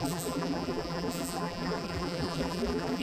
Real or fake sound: fake